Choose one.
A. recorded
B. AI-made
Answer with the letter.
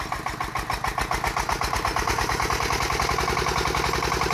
A